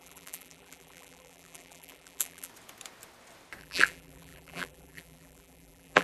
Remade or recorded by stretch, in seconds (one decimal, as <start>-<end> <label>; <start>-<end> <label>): 0.0-2.5 remade; 2.5-3.6 recorded; 3.6-6.0 remade